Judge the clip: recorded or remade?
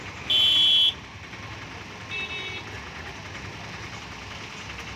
recorded